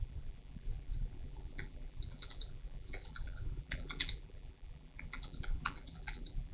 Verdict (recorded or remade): remade